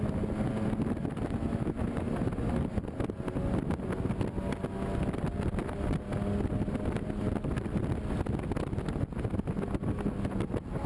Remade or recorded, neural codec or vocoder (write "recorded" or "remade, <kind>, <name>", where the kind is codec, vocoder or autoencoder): recorded